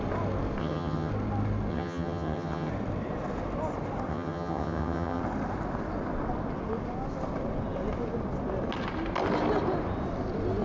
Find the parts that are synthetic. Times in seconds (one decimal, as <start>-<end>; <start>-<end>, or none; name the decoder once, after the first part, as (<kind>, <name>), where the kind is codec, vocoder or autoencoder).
0.6-1.1 (vocoder, HiFi-GAN); 1.7-2.7; 4.1-5.2